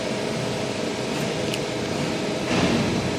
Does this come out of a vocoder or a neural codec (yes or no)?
no